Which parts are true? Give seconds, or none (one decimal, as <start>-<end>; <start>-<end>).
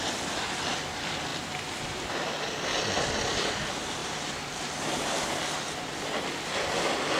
0.0-4.0; 6.0-7.2